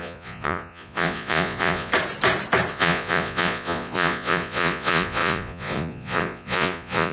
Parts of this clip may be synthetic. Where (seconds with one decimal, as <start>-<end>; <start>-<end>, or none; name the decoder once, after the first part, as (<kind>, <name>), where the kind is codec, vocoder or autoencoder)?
0.0-1.9 (vocoder, Vocos); 2.7-7.1